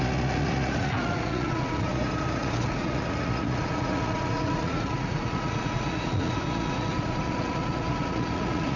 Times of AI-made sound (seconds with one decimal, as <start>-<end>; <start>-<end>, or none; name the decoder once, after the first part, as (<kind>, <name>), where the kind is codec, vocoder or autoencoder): 0.0-8.8 (vocoder, Vocos)